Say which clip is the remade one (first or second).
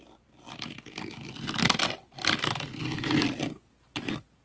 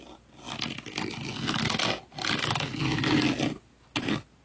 first